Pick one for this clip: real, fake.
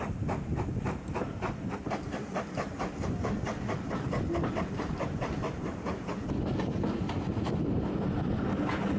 real